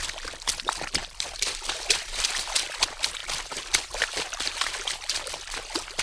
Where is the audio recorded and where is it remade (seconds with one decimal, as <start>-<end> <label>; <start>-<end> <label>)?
0.0-1.0 recorded; 1.0-2.3 remade; 2.3-3.2 recorded; 3.2-5.3 remade; 5.3-6.0 recorded